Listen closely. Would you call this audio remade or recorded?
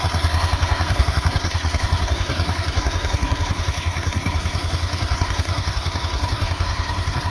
remade